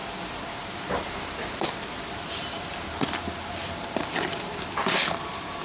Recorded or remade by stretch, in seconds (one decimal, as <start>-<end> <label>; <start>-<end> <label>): 0.0-5.6 recorded